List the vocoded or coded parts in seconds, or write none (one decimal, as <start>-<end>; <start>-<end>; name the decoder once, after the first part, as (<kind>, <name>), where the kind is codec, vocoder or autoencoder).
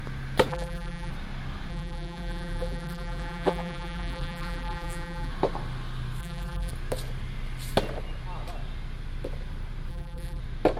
0.5-1.1 (vocoder, BigVGAN v2); 1.7-5.3; 6.2-6.7; 9.9-10.4